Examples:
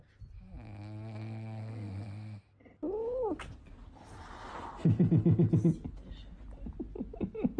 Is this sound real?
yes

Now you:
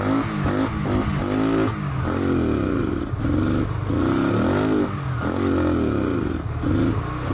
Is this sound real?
yes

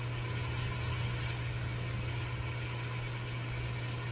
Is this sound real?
yes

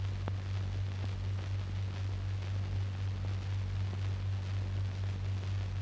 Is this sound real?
yes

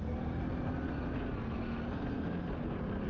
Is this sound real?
yes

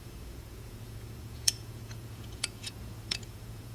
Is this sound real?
no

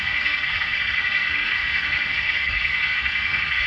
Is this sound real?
no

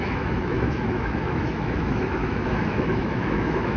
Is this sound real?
no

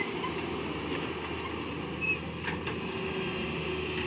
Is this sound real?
yes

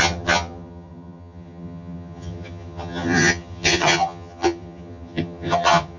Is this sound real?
no